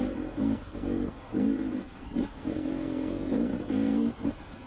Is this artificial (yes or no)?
yes